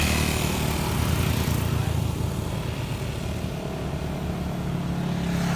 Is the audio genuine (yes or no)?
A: yes